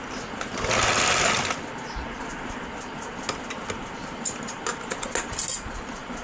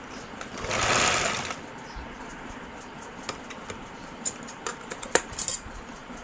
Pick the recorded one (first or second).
first